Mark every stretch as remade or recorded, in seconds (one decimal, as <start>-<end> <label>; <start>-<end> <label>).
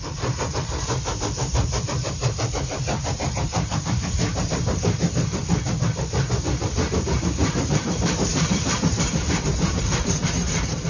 0.0-5.3 remade; 5.3-6.9 recorded; 6.9-10.9 remade